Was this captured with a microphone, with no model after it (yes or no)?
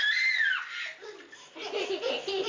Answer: yes